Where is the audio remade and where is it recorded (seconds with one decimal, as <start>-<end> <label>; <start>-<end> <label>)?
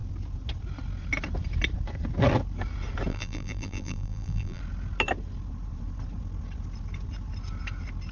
0.0-3.1 recorded; 3.1-4.6 remade; 4.6-8.1 recorded